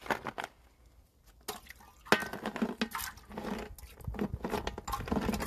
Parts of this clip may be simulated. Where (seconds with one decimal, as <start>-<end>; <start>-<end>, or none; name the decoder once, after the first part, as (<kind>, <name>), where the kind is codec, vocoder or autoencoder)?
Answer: none